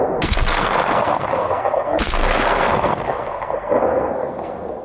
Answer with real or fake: fake